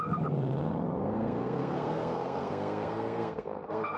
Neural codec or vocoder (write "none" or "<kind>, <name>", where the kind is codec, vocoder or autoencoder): codec, SNAC